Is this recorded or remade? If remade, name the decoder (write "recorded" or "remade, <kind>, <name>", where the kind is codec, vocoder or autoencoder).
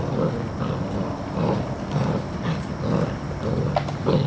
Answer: recorded